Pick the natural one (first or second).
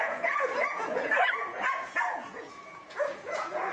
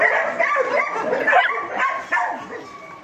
second